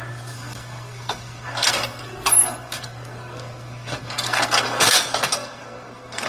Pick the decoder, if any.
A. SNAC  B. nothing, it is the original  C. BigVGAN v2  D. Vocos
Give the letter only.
A